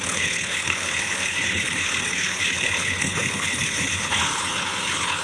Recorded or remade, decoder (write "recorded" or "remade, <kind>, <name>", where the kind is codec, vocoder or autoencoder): remade, codec, HILCodec